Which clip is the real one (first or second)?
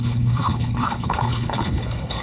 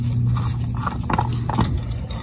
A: second